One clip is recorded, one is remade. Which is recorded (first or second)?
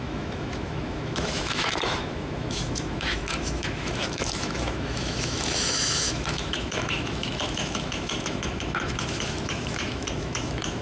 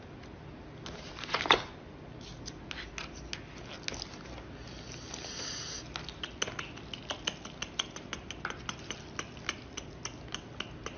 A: second